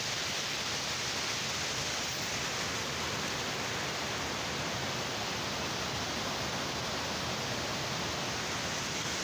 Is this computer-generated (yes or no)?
no